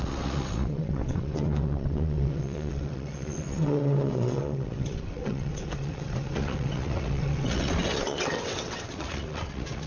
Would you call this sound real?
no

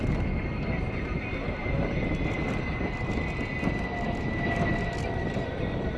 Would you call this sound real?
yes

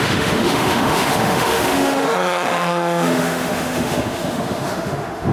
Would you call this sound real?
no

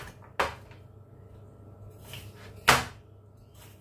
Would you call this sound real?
yes